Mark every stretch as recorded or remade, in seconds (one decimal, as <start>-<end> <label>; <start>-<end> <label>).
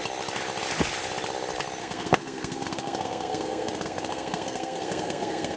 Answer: 0.0-1.8 recorded; 1.8-5.6 remade